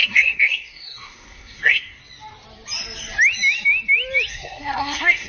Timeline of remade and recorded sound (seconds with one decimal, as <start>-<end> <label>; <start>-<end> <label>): 0.0-2.0 remade; 2.0-4.3 recorded; 4.3-5.3 remade